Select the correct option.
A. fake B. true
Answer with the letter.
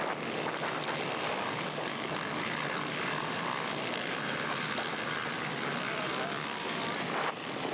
B